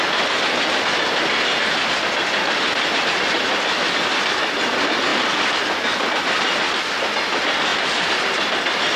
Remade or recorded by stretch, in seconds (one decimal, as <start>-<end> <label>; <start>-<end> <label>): 0.0-9.0 recorded